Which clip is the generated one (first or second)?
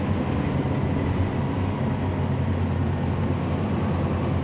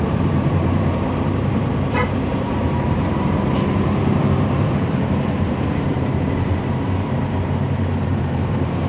second